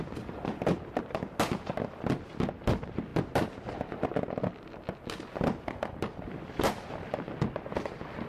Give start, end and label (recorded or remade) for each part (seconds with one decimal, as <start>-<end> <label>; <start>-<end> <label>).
0.0-8.3 recorded